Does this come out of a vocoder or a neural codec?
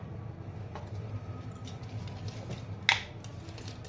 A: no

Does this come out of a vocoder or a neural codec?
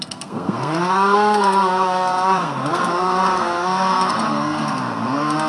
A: yes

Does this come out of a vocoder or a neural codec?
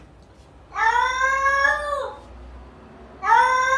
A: no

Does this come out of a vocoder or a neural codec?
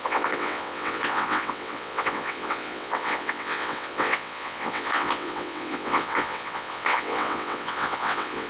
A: yes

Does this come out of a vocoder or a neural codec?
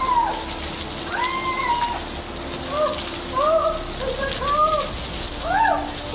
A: no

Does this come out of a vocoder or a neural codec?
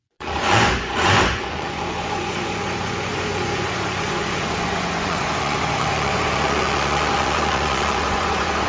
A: yes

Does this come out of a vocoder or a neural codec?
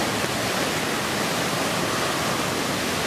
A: no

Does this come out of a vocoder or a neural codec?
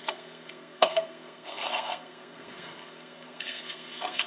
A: yes